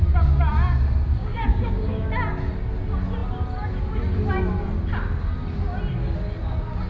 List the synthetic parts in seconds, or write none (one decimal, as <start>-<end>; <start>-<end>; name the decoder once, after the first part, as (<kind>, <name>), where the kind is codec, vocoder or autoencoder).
1.2-2.1 (codec, DAC)